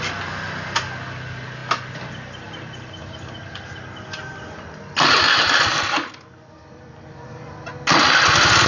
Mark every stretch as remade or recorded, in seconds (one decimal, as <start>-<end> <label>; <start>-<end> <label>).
0.0-8.7 recorded